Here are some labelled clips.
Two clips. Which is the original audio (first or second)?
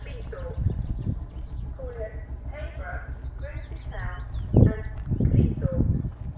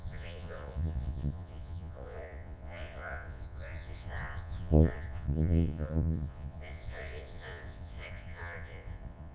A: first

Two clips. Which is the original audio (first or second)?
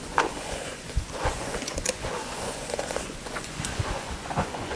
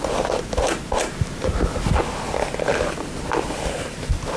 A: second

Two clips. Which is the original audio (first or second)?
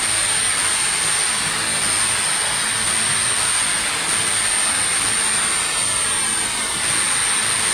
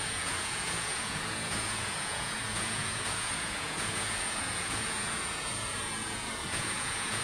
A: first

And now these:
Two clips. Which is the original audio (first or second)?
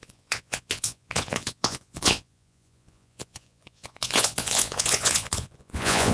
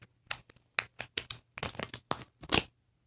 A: second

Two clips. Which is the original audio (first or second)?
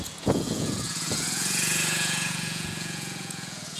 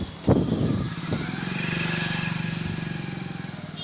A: second